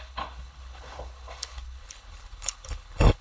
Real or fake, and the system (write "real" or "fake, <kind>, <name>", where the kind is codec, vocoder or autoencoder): fake, codec, HILCodec